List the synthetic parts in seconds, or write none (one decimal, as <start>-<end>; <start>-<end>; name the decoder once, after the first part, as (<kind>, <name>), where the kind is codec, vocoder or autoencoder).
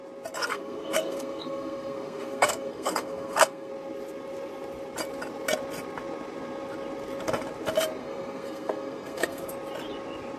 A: 0.4-3.7 (codec, SNAC); 8.0-9.5